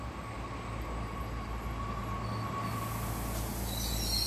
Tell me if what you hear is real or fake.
real